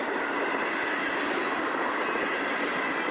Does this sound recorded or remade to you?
recorded